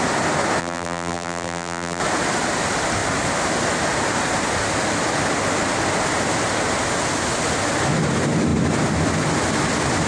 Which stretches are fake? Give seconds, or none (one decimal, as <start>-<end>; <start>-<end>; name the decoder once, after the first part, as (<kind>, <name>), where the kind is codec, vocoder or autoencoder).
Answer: 0.6-2.0 (vocoder, BigVGAN v2)